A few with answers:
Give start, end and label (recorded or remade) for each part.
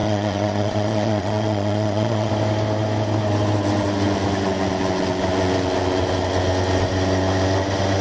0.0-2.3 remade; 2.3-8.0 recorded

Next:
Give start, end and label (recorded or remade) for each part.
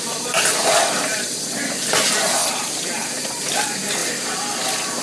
0.0-2.4 recorded; 2.4-3.4 remade; 3.4-5.0 recorded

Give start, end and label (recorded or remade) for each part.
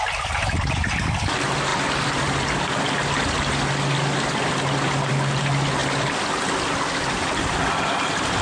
0.0-8.4 recorded